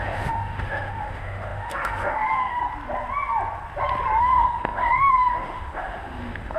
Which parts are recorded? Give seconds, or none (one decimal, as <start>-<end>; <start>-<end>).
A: 2.6-4.2